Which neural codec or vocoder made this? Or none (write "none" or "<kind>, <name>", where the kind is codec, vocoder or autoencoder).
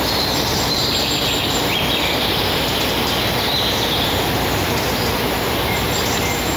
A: vocoder, BigVGAN v2